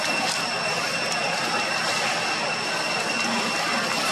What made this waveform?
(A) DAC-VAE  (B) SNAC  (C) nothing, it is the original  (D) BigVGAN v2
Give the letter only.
C